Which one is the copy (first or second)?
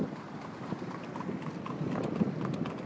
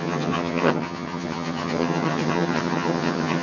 second